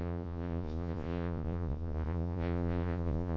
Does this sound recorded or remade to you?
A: remade